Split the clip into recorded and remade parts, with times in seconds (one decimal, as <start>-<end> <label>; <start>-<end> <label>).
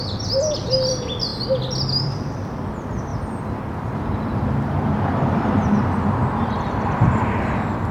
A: 0.0-1.3 remade; 1.3-2.0 recorded; 2.0-7.9 remade